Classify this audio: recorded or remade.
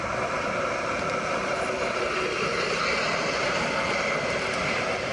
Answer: recorded